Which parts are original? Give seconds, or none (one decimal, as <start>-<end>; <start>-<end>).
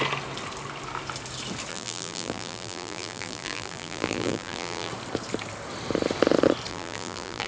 0.0-1.7; 4.9-6.7